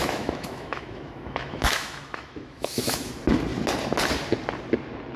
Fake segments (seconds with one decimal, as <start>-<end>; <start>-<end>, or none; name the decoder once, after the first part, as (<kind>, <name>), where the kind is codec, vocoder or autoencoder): 0.0-3.1 (autoencoder, DAC-VAE)